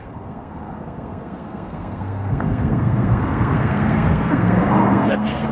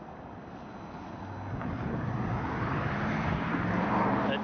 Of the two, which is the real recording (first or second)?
second